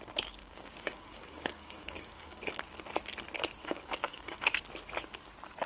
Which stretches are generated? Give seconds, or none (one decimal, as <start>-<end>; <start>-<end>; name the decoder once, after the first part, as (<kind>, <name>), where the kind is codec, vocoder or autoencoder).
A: 0.4-2.6 (codec, DAC); 3.6-4.6